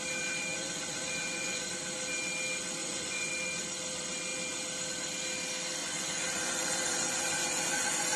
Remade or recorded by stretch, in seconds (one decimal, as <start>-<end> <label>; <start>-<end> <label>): 0.0-0.5 recorded; 0.5-1.7 remade; 1.7-2.8 recorded; 2.8-3.3 remade; 3.3-5.8 recorded; 5.8-8.2 remade